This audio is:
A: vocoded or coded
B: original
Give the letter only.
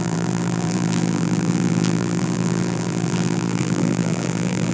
A